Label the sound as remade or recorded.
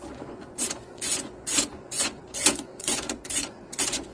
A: remade